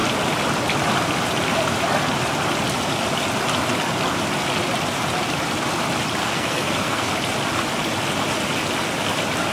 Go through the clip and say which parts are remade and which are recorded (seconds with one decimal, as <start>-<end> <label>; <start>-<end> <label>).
0.0-6.2 recorded; 6.2-7.1 remade; 7.1-9.5 recorded